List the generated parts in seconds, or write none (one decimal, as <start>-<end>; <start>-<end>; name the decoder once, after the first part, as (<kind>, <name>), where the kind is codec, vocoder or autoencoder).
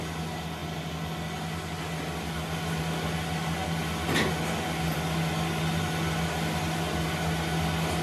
none